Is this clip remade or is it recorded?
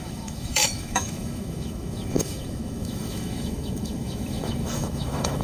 remade